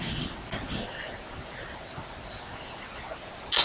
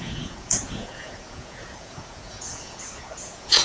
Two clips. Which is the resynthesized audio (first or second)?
second